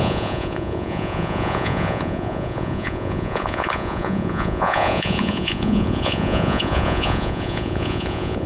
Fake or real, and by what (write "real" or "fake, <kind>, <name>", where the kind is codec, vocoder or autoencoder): fake, vocoder, Vocos